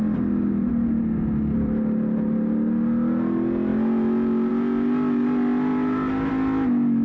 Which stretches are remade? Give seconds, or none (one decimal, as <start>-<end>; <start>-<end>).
none